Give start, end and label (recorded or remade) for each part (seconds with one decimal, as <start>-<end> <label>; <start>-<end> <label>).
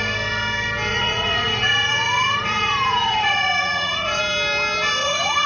0.0-0.9 recorded; 0.9-4.2 remade; 4.2-5.0 recorded; 5.0-5.5 remade